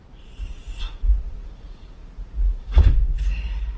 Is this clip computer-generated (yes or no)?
yes